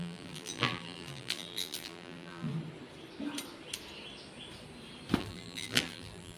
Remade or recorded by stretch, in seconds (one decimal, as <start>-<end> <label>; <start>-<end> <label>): 0.0-2.5 remade; 2.5-5.2 recorded; 5.2-6.4 remade